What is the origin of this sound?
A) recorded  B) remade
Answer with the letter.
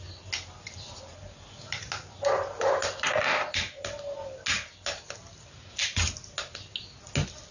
A